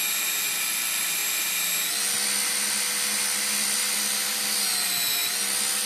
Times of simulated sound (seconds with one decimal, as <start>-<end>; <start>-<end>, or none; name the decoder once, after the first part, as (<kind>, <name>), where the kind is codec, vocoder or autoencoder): none